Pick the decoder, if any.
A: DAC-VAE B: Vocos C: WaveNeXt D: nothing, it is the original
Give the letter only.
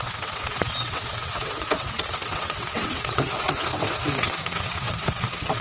C